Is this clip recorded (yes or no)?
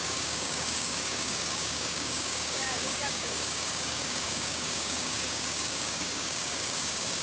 no